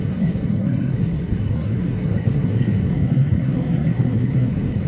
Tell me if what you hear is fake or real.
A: fake